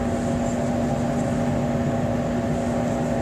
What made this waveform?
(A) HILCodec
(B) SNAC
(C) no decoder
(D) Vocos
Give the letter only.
C